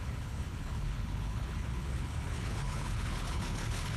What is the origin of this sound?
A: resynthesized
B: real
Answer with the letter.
A